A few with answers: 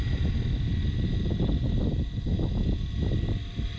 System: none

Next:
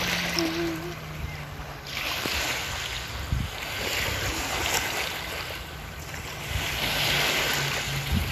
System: none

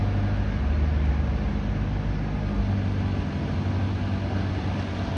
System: none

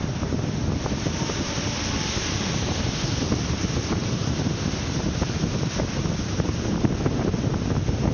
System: none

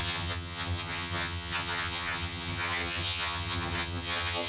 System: vocoder, HiFi-GAN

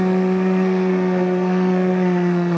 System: codec, SNAC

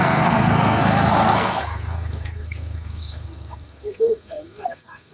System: codec, SNAC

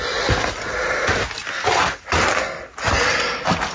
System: none